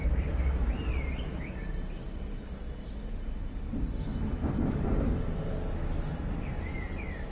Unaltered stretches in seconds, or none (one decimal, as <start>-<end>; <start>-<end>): 1.4-7.3